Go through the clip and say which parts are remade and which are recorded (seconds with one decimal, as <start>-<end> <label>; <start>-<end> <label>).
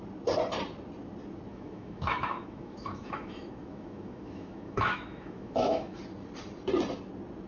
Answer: 0.0-1.5 recorded; 1.5-6.0 remade; 6.0-7.5 recorded